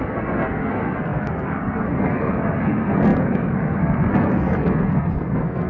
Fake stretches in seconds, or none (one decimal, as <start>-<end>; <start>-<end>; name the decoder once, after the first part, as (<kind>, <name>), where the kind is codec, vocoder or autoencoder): 0.0-5.7 (codec, SNAC)